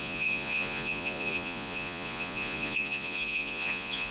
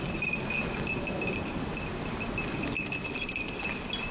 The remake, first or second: first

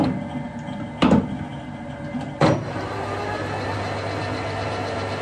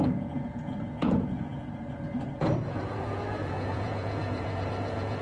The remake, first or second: second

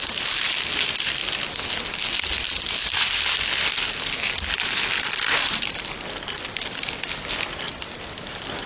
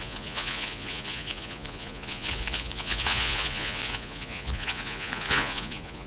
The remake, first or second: second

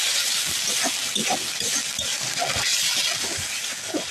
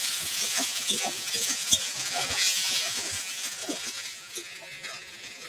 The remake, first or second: second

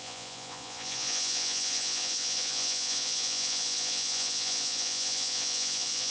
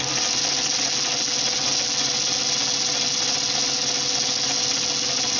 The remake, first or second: first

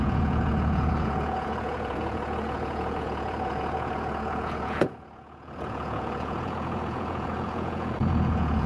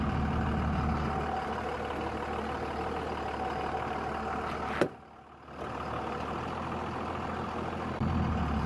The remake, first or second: first